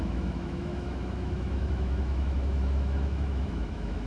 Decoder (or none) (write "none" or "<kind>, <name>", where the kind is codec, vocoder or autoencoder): autoencoder, DAC-VAE